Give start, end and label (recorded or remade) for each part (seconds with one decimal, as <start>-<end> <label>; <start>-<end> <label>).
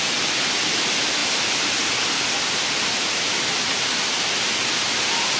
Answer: 0.0-5.4 recorded